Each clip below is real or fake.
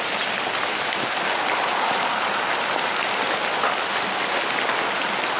real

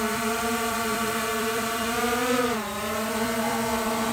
fake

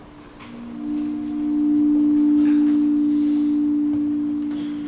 real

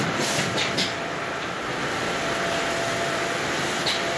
fake